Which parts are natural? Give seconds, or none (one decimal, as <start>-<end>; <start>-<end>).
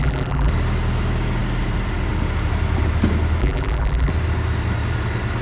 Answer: 0.5-3.4; 4.1-5.4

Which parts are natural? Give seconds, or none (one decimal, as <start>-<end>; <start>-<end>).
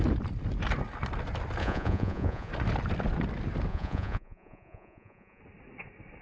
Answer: 0.0-1.6; 2.5-3.7; 5.4-6.2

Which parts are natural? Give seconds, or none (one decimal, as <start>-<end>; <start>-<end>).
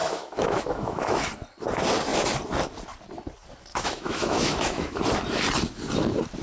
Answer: 1.3-3.7; 5.0-6.4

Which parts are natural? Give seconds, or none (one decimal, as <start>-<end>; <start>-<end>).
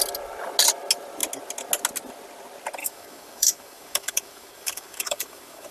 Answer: 0.0-2.8